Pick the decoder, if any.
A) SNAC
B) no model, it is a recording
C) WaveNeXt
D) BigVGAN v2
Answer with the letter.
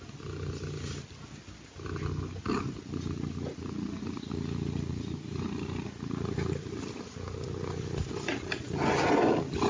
B